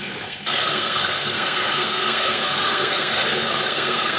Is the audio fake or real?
fake